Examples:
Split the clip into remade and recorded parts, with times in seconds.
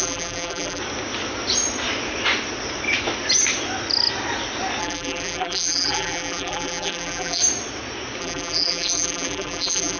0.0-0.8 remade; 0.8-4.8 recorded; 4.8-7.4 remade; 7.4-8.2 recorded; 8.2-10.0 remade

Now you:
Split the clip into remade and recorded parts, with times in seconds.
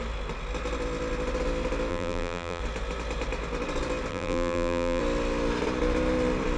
0.0-1.9 recorded; 1.9-2.6 remade; 2.6-4.1 recorded; 4.1-5.0 remade; 5.0-6.6 recorded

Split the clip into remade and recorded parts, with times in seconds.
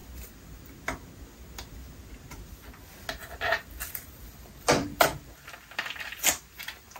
0.0-3.2 recorded; 3.2-6.4 remade; 6.4-7.0 recorded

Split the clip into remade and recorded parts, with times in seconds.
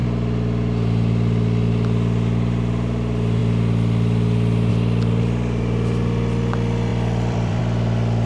0.0-6.9 recorded; 6.9-7.6 remade; 7.6-8.3 recorded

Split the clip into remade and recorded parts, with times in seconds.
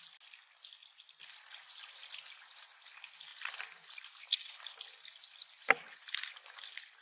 0.0-7.0 recorded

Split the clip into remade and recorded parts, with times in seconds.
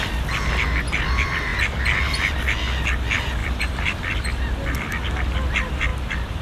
0.0-3.4 recorded; 3.4-4.1 remade; 4.1-5.9 recorded; 5.9-6.4 remade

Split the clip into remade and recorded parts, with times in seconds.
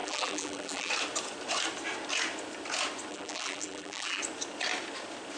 0.0-0.9 remade; 0.9-3.1 recorded; 3.1-4.2 remade; 4.2-5.4 recorded